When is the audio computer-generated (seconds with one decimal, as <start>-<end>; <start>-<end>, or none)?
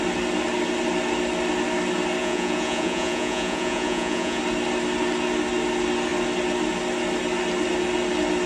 2.2-4.4